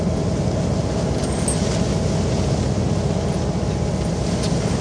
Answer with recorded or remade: recorded